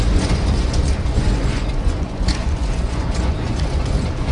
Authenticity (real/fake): fake